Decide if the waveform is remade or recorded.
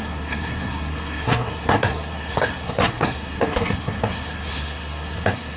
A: remade